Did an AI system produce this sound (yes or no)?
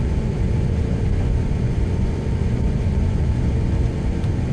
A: yes